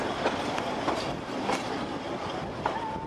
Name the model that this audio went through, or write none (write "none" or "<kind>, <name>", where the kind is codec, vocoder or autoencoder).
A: none